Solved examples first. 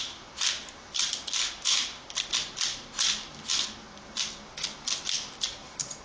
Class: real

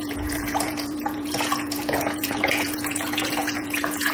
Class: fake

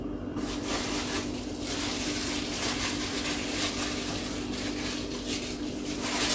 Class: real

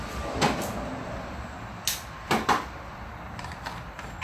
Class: real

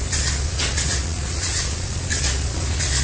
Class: fake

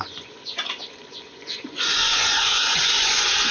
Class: fake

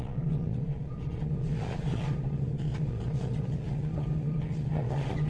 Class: fake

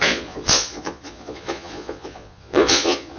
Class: fake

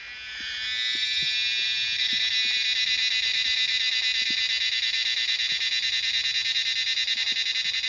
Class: real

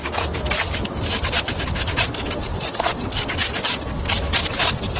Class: real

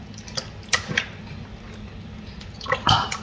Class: real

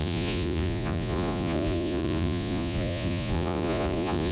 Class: fake